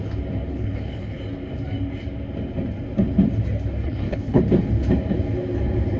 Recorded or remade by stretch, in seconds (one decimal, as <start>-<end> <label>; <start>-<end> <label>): 0.0-0.5 recorded; 0.5-1.2 remade; 1.2-3.8 recorded; 3.8-4.4 remade; 4.4-6.0 recorded